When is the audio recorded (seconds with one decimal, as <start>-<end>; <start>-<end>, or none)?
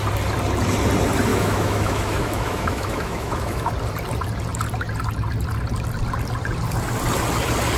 0.0-1.3; 3.7-7.8